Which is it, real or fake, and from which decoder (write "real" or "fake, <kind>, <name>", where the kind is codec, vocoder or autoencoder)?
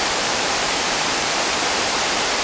fake, vocoder, BigVGAN v2